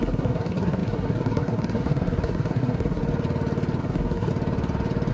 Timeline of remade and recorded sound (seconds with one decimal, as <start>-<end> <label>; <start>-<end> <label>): 0.0-3.0 remade; 3.0-3.8 recorded; 3.8-4.3 remade; 4.3-5.1 recorded